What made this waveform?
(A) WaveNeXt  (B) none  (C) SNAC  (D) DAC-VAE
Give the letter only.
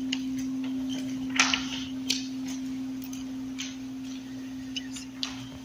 B